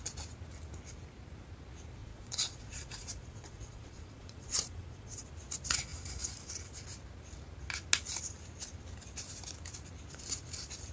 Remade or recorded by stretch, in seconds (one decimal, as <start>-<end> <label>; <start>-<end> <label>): 0.0-2.0 recorded; 2.0-5.3 remade; 5.3-10.9 recorded